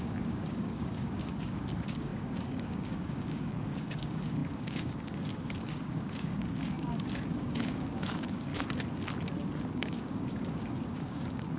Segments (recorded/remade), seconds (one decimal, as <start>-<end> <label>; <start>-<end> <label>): 0.0-8.5 remade; 8.5-9.7 recorded; 9.7-11.6 remade